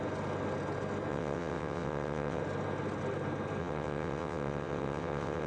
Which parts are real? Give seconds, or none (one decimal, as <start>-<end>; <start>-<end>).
0.0-1.1; 2.4-3.6